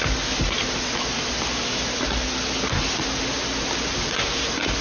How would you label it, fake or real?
real